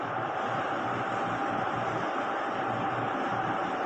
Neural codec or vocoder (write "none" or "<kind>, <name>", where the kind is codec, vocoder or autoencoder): none